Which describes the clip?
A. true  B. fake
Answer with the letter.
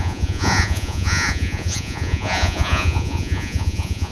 B